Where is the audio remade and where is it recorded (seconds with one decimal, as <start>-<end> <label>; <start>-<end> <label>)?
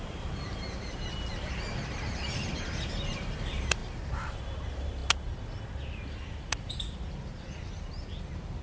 0.0-5.0 remade; 5.0-8.2 recorded; 8.2-8.6 remade